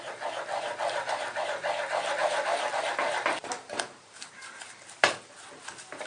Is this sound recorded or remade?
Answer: remade